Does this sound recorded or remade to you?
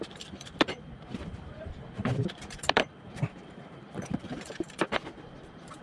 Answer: remade